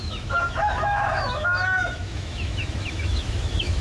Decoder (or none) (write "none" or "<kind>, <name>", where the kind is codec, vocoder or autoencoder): autoencoder, DAC-VAE